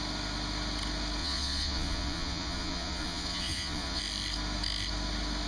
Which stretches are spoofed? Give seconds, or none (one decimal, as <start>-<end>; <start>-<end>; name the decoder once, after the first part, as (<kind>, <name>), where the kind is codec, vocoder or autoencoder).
1.2-4.0 (vocoder, Vocos)